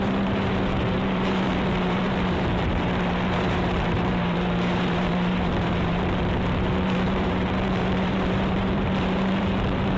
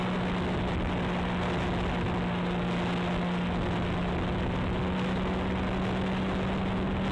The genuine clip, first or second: second